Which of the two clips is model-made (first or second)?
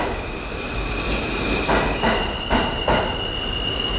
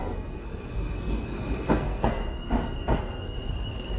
second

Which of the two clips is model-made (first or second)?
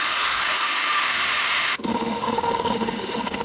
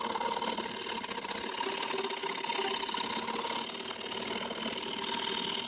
first